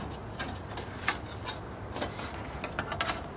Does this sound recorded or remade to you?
recorded